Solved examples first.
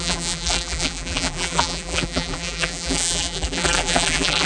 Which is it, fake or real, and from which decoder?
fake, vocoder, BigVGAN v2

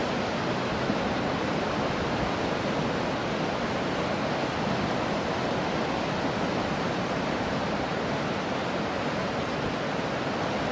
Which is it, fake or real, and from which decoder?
real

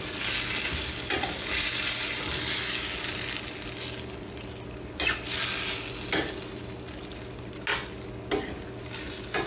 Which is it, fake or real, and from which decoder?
real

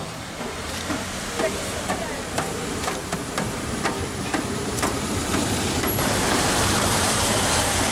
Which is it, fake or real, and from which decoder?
fake, vocoder, BigVGAN v2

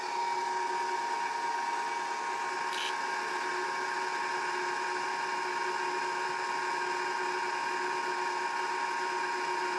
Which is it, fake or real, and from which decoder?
real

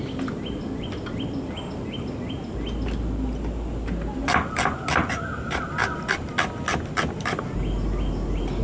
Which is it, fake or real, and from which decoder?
real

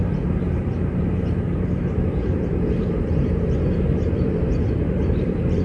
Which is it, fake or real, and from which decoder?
fake, vocoder, BigVGAN v2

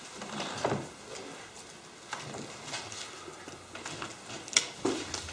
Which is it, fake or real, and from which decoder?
real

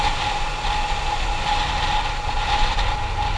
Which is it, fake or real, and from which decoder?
real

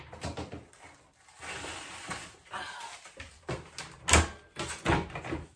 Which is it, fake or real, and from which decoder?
real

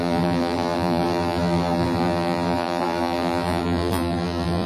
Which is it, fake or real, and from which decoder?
fake, vocoder, BigVGAN v2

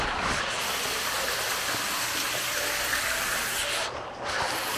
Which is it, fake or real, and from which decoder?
real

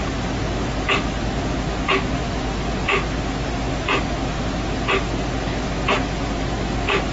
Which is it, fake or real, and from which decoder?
real